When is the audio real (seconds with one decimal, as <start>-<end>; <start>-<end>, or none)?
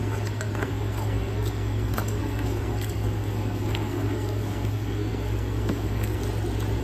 6.2-6.8